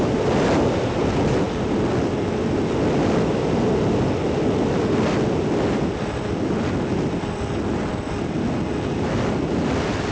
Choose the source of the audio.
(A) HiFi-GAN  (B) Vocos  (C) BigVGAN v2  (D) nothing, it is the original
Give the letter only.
D